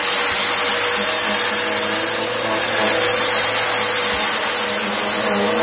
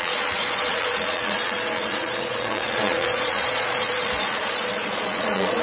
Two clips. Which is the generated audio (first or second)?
second